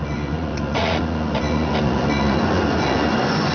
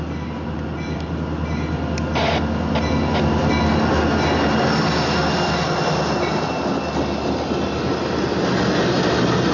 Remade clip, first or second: first